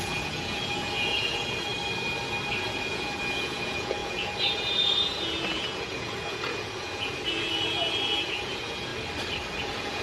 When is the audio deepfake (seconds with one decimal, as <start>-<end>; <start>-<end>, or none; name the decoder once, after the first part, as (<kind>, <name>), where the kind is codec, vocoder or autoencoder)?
0.0-1.7 (vocoder, Vocos); 2.6-8.9; 9.6-10.0